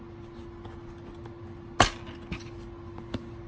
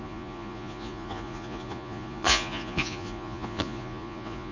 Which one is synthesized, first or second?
second